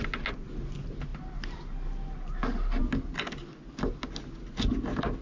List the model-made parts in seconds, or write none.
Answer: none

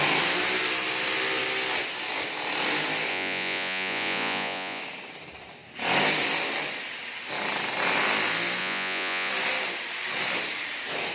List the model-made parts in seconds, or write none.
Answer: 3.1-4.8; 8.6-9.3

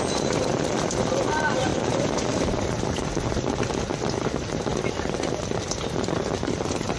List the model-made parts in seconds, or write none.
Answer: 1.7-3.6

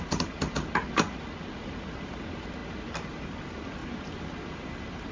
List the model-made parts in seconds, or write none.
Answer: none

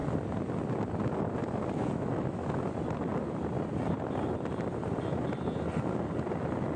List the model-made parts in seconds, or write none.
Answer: 1.8-2.6